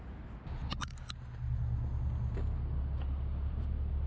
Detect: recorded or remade recorded